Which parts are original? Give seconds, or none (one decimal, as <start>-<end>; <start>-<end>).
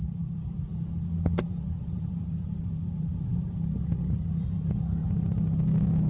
0.7-1.5; 5.0-6.1